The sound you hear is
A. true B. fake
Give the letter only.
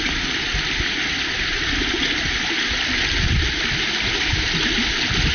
A